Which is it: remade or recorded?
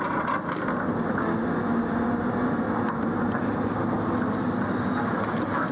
recorded